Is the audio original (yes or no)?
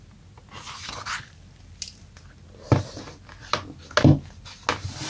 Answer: yes